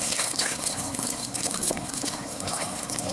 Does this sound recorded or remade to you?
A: remade